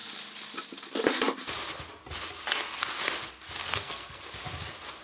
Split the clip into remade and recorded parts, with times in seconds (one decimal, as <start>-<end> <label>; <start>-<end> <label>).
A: 0.0-3.6 recorded; 3.6-4.2 remade; 4.2-5.0 recorded